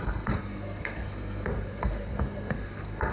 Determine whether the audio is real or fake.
fake